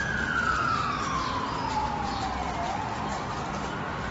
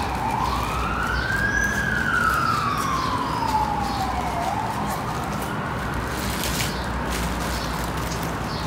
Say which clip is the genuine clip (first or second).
second